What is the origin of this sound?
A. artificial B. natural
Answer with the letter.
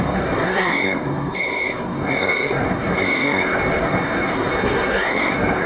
A